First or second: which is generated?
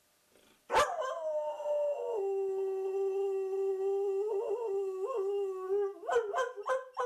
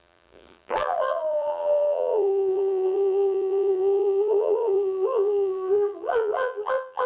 second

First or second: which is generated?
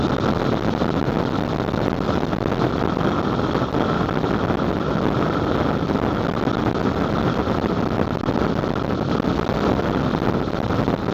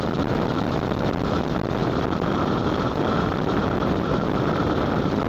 second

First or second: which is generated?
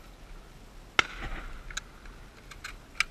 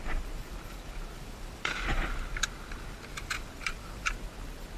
second